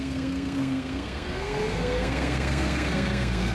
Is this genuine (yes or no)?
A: no